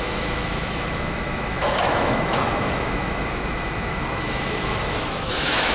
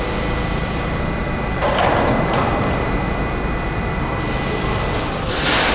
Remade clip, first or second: first